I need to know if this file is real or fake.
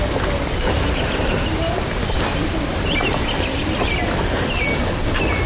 real